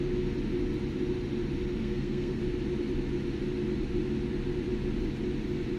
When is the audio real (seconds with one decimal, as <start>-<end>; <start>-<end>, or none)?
0.0-1.8; 2.4-5.8